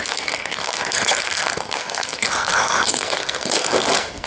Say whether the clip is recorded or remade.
remade